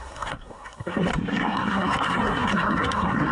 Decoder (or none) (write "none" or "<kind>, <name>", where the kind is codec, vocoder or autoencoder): codec, SNAC